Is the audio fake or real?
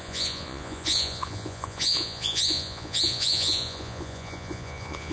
fake